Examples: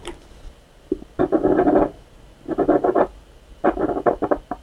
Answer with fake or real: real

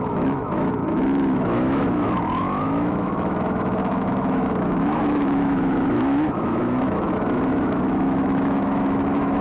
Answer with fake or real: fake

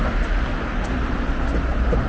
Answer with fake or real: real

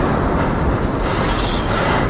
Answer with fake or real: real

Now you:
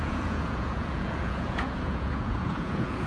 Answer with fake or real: fake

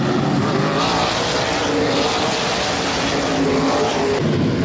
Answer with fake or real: real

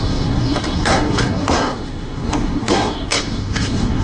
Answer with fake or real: fake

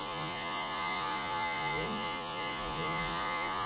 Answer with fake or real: fake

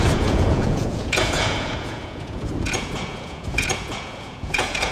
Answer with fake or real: fake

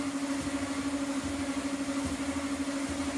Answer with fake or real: real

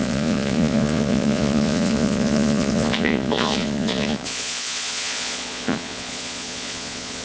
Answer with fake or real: fake